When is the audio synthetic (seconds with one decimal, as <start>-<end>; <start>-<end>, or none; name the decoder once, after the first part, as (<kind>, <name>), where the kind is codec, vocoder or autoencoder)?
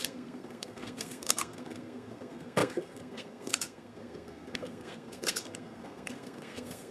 0.0-6.9 (codec, SNAC)